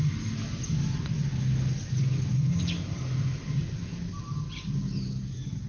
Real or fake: real